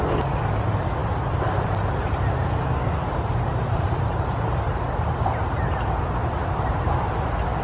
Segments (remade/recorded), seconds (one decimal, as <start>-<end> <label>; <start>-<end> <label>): 0.0-3.5 recorded; 3.5-4.1 remade; 4.1-6.2 recorded; 6.2-6.7 remade; 6.7-7.6 recorded